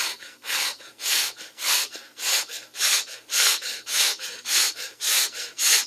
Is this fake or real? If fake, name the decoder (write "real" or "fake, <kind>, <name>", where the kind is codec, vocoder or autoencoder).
fake, codec, SNAC